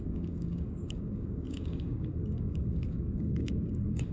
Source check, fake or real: fake